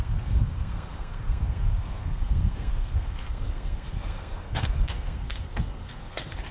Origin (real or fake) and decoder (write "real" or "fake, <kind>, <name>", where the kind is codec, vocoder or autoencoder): fake, codec, SNAC